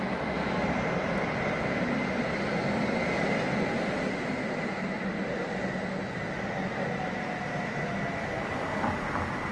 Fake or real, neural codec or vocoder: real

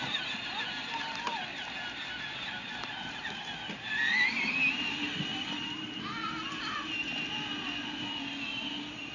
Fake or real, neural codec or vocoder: real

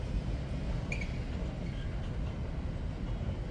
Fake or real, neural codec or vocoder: real